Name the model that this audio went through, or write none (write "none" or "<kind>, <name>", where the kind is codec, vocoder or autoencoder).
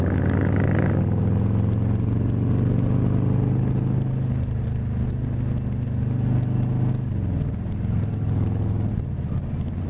none